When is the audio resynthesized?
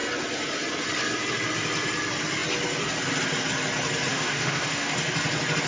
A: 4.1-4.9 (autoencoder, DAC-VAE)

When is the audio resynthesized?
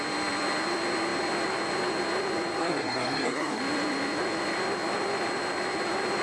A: 2.6-3.6 (codec, SNAC)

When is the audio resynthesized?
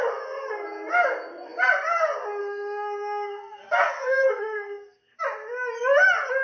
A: 2.4-5.2 (codec, SNAC)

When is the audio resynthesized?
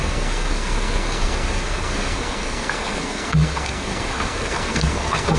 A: 0.0-5.4 (codec, SNAC)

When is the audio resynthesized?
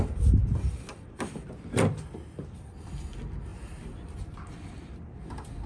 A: none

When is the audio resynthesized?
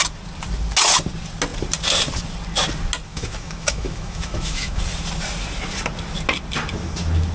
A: 3.1-4.8 (autoencoder, DAC-VAE)